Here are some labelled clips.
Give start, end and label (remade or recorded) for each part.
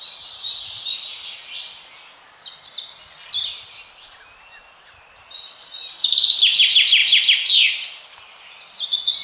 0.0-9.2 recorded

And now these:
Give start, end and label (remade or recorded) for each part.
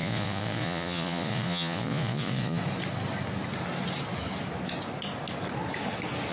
0.0-2.6 remade; 2.6-6.3 recorded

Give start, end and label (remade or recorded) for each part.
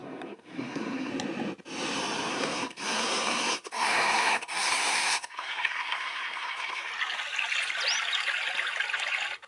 0.0-1.1 remade; 1.1-2.3 recorded; 2.3-6.9 remade; 6.9-9.5 recorded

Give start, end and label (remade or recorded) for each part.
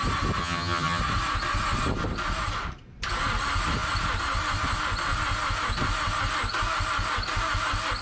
0.0-0.4 recorded; 0.4-1.0 remade; 1.0-8.0 recorded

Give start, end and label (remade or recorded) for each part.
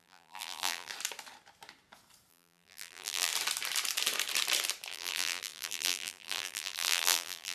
0.0-0.9 remade; 0.9-2.3 recorded; 2.3-3.3 remade; 3.3-4.9 recorded; 4.9-7.5 remade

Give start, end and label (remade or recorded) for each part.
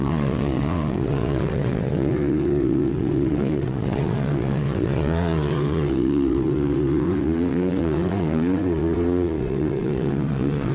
0.0-10.7 remade